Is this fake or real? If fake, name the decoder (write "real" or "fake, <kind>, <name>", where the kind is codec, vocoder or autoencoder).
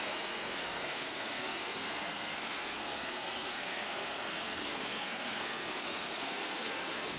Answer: fake, codec, SNAC